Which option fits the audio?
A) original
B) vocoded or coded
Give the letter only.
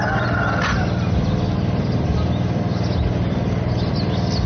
A